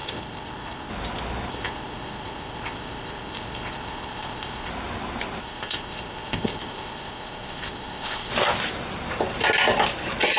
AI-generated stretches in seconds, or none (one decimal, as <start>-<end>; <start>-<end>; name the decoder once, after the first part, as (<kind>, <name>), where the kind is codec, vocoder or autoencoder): 0.0-0.9 (codec, ZipCodec); 1.5-4.7; 5.4-8.3